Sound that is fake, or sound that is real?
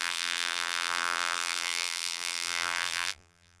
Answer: fake